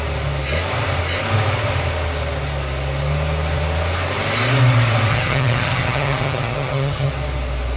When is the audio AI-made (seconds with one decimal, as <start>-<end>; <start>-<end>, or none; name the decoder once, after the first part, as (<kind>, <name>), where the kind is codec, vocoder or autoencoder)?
5.1-7.1 (vocoder, HiFi-GAN)